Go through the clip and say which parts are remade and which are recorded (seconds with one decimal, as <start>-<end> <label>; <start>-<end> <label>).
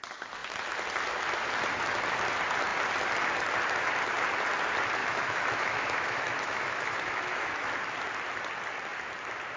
0.0-5.0 recorded; 5.0-7.7 remade; 7.7-9.6 recorded